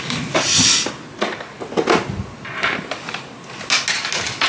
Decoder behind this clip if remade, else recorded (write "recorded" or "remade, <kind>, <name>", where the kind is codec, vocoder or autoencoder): recorded